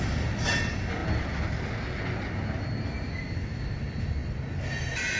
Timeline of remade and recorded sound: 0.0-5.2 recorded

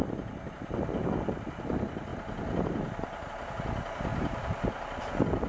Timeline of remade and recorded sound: 0.0-5.5 recorded

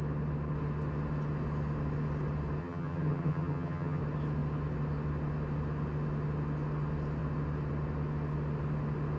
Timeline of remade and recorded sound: 0.0-2.6 recorded; 2.6-4.0 remade; 4.0-9.2 recorded

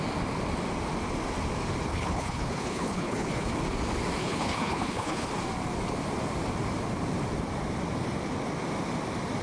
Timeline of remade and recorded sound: 0.0-1.9 recorded; 1.9-3.5 remade; 3.5-4.2 recorded; 4.2-5.3 remade; 5.3-9.4 recorded

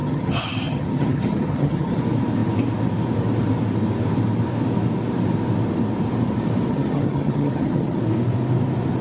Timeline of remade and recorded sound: 0.0-2.0 remade; 2.0-6.7 recorded; 6.7-8.0 remade; 8.0-9.0 recorded

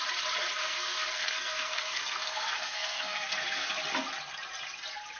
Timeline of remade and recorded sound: 0.0-0.6 recorded; 0.6-3.7 remade; 3.7-5.2 recorded

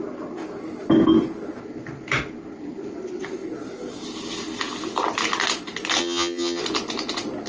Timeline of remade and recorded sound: 0.0-6.0 recorded; 6.0-6.6 remade; 6.6-7.5 recorded